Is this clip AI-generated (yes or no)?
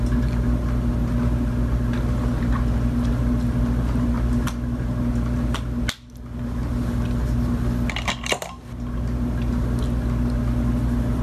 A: no